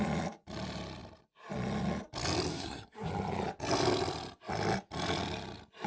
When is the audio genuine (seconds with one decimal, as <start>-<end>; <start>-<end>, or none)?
0.0-2.5; 3.1-5.9